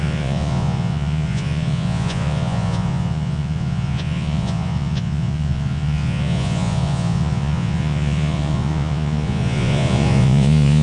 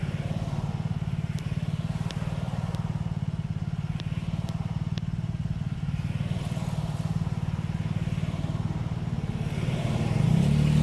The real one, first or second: second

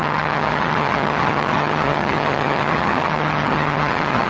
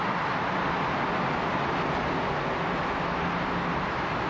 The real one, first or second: second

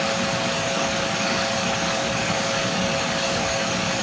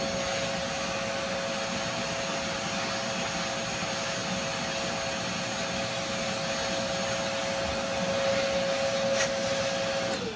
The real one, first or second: second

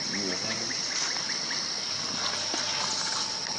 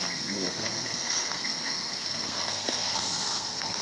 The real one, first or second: first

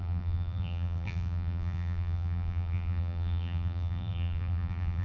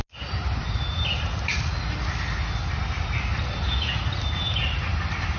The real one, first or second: second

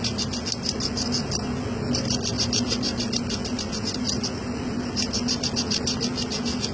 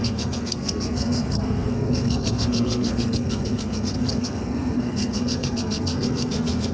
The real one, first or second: first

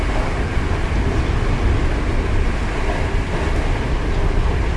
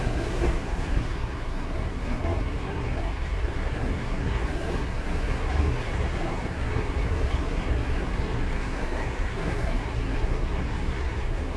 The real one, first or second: first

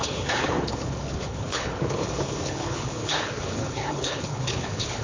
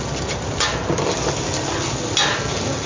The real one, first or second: second